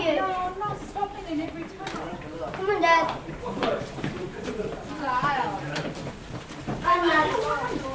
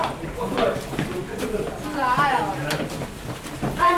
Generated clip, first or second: first